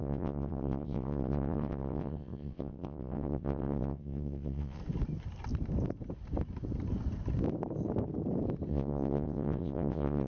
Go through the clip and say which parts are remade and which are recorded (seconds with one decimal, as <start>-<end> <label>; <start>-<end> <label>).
0.0-4.8 remade; 4.8-8.7 recorded; 8.7-10.3 remade